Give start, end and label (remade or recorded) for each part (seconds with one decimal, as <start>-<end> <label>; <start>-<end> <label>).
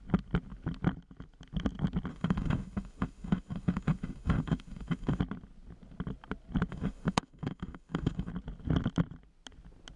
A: 0.0-2.1 recorded; 2.1-5.2 remade; 5.2-6.7 recorded; 6.7-8.3 remade; 8.3-10.0 recorded